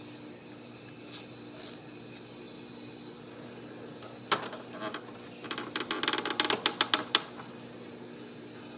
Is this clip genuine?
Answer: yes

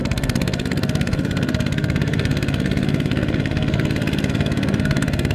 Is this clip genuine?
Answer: no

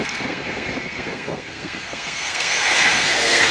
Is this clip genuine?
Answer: no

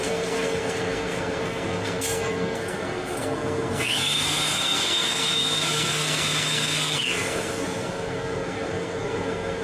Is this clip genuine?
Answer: no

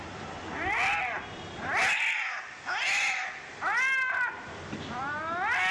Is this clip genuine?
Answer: yes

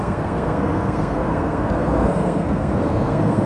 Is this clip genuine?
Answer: no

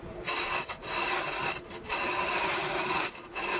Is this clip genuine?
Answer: yes